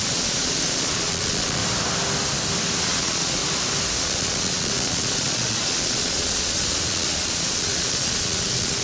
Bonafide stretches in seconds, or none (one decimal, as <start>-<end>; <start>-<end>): 1.6-2.8; 3.4-4.0